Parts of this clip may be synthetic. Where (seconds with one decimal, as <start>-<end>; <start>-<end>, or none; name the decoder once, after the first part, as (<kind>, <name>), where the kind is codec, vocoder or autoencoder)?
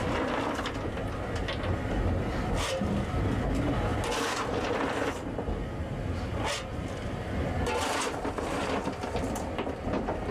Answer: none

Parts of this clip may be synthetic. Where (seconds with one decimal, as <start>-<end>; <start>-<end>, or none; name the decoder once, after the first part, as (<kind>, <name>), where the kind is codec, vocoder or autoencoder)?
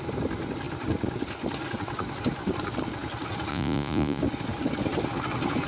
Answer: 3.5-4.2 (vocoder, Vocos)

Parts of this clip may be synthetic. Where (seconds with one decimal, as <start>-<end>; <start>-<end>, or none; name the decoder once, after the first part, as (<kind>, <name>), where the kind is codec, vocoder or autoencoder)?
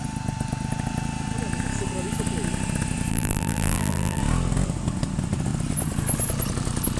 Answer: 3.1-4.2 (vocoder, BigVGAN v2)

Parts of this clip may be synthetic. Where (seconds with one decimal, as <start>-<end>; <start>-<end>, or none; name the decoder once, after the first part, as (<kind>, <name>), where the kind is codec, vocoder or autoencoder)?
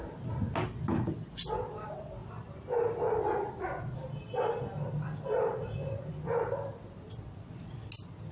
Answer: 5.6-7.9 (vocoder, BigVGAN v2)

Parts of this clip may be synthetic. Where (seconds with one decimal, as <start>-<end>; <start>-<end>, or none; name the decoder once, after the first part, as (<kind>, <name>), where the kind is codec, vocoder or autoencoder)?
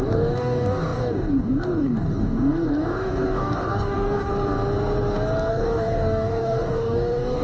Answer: 0.0-4.3 (codec, DAC); 5.5-7.4